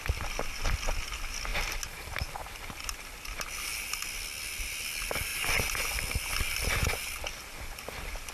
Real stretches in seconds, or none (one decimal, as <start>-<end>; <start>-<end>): 0.0-8.3